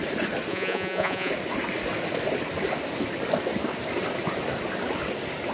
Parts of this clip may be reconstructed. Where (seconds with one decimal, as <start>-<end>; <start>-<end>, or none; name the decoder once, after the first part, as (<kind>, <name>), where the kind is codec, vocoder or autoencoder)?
0.5-1.3 (vocoder, Vocos)